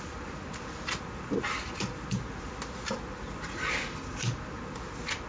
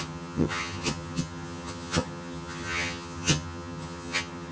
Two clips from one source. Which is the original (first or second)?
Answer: first